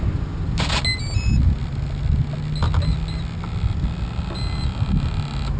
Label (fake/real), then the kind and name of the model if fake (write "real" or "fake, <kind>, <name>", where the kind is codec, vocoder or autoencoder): real